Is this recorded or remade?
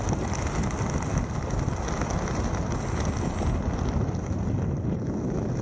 recorded